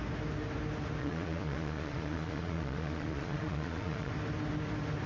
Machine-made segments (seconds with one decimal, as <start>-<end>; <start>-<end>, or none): 1.0-4.1